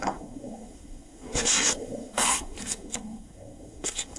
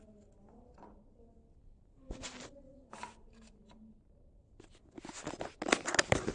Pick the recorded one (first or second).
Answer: second